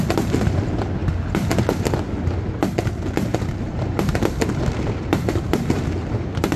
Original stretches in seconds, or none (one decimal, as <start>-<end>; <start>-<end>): 0.0-3.3; 5.8-6.6